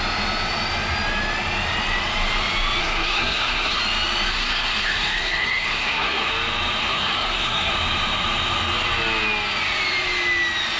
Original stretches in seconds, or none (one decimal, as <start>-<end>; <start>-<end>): 0.0-2.8; 3.8-4.3; 6.3-6.8; 7.7-10.8